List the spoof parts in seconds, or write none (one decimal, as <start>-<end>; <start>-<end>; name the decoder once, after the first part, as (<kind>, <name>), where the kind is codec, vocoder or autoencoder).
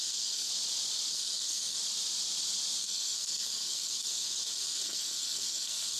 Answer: 0.0-0.5 (codec, SNAC); 1.1-1.8; 2.8-6.0